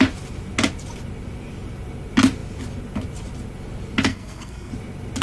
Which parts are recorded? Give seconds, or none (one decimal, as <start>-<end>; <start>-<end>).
0.0-4.1; 4.7-5.2